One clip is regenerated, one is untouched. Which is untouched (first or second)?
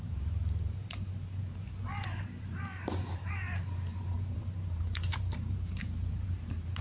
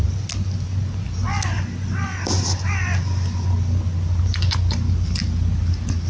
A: second